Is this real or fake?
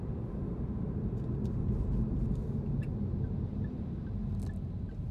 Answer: real